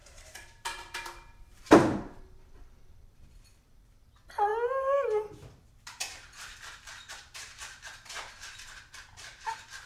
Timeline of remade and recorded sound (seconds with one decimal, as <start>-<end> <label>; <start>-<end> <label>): 0.0-4.5 remade; 4.5-5.4 recorded; 5.4-9.9 remade